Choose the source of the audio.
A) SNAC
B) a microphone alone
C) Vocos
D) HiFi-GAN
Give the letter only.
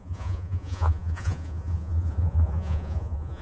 C